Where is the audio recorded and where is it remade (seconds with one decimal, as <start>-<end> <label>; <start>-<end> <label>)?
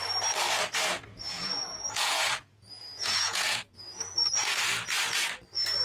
0.0-1.1 recorded; 1.1-4.6 remade; 4.6-5.8 recorded